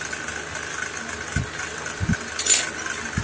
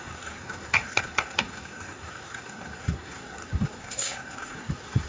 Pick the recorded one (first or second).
first